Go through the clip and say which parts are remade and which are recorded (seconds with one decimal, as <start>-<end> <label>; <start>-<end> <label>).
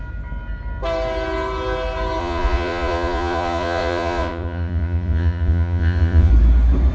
0.0-2.2 recorded; 2.2-6.3 remade; 6.3-6.9 recorded